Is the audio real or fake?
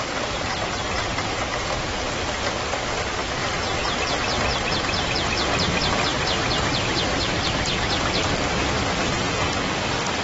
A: real